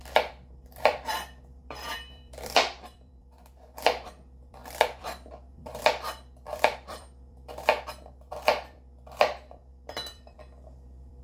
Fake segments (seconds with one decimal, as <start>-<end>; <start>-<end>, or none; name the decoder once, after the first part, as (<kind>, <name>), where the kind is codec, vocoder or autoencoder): 0.0-11.2 (vocoder, BigVGAN v2)